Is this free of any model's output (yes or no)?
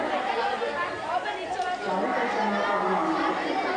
yes